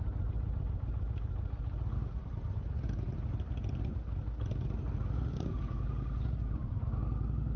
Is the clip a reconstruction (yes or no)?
no